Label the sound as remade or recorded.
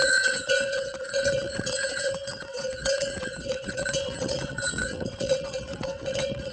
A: remade